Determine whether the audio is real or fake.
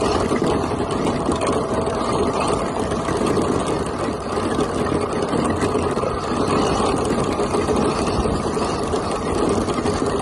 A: real